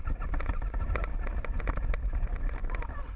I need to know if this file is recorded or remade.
recorded